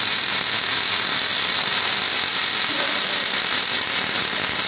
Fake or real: real